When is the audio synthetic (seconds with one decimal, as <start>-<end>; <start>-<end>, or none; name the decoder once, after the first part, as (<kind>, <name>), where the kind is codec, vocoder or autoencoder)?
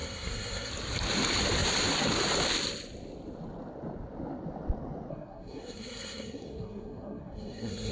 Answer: 0.0-0.7 (codec, SNAC); 5.1-7.9